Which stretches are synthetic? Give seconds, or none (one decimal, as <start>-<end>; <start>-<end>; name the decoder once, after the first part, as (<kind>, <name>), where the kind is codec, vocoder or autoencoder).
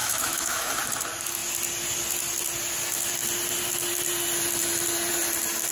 0.0-0.7 (autoencoder, DAC-VAE)